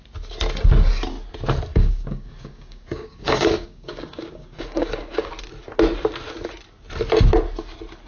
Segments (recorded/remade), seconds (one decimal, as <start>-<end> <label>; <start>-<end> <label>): 0.0-1.7 recorded; 1.7-5.3 remade; 5.3-8.1 recorded